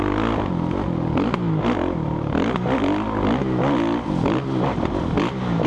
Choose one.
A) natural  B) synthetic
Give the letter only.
A